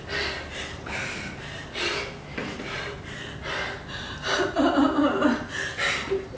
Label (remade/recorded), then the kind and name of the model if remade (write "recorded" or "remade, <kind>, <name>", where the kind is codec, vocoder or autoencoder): recorded